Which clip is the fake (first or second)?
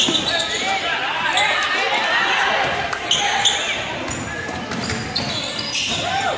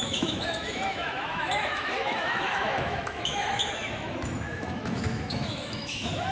second